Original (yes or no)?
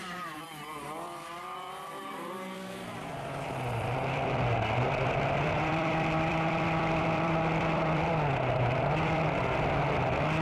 no